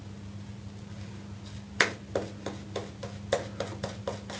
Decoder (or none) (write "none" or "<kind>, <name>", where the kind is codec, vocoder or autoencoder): none